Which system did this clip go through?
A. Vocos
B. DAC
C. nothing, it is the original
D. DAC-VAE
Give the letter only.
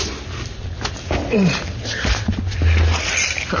C